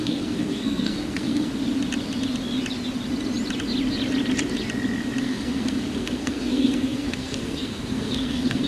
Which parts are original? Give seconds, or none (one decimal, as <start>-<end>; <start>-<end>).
1.5-5.2